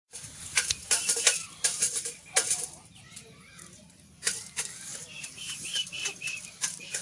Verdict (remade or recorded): remade